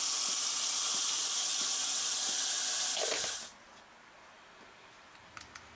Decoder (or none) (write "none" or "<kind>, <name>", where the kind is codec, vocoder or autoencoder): none